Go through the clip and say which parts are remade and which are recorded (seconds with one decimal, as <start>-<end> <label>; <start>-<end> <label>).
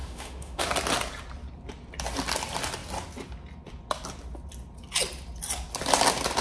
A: 0.0-0.7 remade; 0.7-6.4 recorded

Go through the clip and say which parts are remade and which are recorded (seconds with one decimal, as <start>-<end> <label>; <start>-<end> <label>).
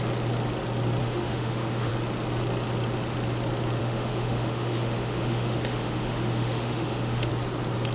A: 0.0-1.0 recorded; 1.0-1.9 remade; 1.9-3.8 recorded; 3.8-7.3 remade; 7.3-7.9 recorded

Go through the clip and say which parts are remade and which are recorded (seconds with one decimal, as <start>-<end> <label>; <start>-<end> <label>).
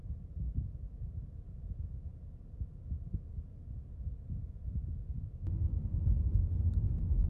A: 0.0-7.3 recorded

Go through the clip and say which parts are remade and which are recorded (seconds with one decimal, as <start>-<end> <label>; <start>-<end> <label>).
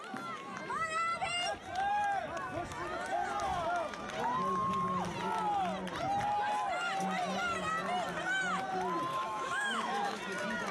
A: 0.0-9.1 recorded; 9.1-10.2 remade; 10.2-10.7 recorded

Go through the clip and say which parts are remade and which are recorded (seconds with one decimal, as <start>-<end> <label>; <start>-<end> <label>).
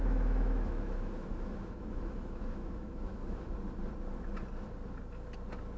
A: 0.0-3.5 remade; 3.5-5.8 recorded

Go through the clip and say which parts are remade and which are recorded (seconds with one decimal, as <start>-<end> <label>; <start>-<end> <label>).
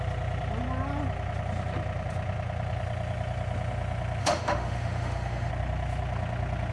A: 0.0-4.2 recorded; 4.2-5.5 remade; 5.5-6.7 recorded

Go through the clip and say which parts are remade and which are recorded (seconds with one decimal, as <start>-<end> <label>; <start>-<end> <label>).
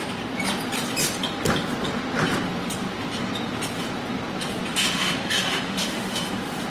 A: 0.0-4.7 recorded; 4.7-6.3 remade; 6.3-6.7 recorded